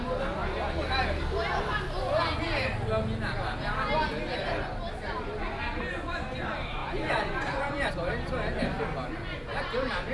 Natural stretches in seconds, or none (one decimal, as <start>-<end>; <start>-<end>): 0.0-6.8; 7.9-10.1